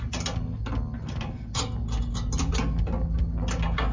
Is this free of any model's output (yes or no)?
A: yes